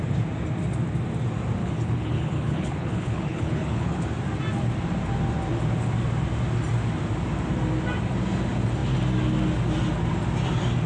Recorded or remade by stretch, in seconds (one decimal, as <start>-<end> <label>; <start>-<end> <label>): 0.0-1.6 recorded; 1.6-4.0 remade; 4.0-10.9 recorded